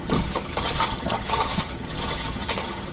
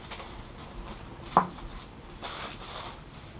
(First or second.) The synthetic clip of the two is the first